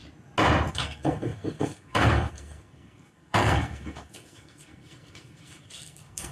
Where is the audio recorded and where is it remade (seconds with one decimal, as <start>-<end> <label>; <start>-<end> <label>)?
0.0-0.7 recorded; 0.7-6.3 remade